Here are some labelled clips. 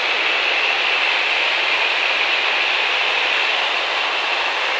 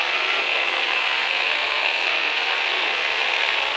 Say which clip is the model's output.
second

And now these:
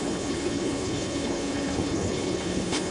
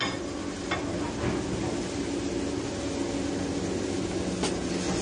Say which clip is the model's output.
first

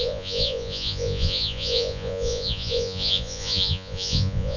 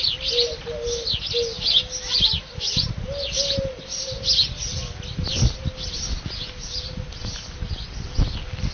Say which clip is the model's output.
first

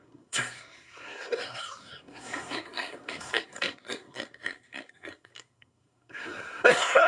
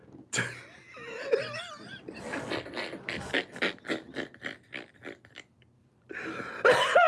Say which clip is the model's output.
first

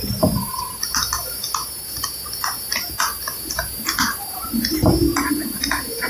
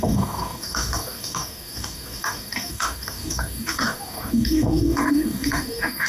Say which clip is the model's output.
second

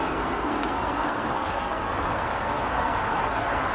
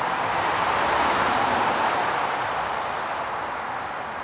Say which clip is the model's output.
first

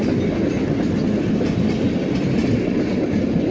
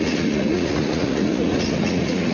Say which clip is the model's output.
second